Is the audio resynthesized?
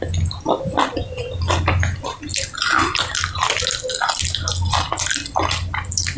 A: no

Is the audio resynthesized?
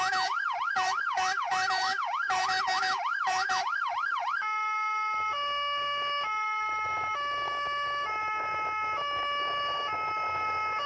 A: yes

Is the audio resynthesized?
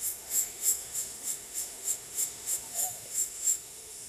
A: yes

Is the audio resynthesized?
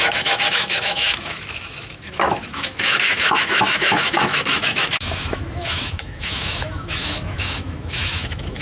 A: yes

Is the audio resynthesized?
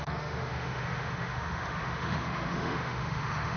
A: yes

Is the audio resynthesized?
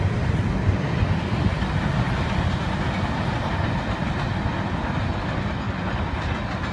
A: no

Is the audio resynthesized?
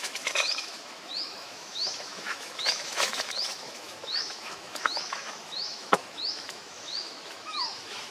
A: yes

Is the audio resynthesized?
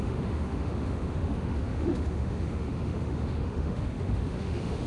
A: yes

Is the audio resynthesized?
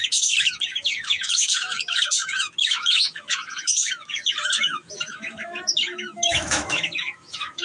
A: yes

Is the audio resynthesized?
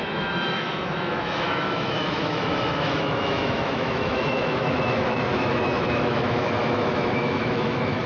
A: yes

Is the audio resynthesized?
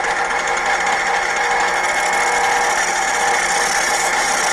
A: no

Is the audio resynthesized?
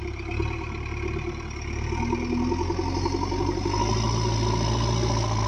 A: no